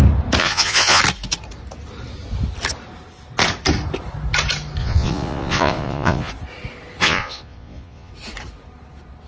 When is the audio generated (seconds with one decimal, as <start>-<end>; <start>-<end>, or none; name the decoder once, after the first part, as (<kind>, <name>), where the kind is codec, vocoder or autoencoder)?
0.4-1.0 (vocoder, Vocos); 4.8-6.3; 7.0-8.1